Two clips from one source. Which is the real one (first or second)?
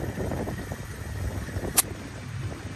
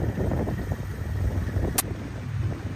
second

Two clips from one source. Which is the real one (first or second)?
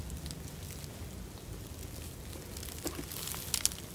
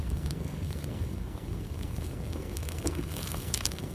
first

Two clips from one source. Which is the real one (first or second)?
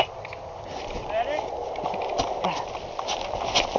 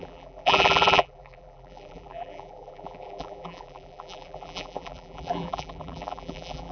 first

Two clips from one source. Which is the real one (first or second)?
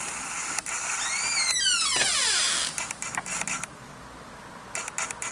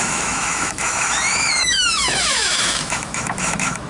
first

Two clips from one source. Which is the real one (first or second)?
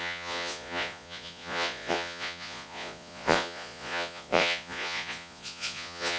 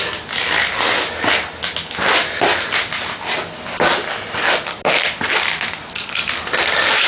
second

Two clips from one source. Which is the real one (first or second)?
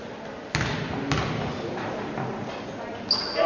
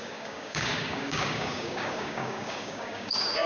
first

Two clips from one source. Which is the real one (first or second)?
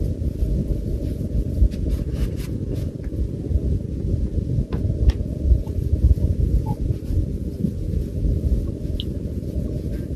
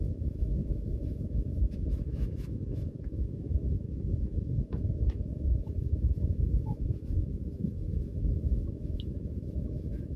first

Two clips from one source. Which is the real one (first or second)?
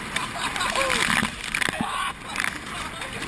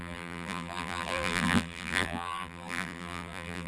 first